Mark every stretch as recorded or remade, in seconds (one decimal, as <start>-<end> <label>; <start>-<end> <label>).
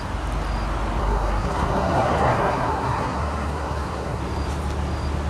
0.0-1.0 recorded; 1.0-4.2 remade; 4.2-5.3 recorded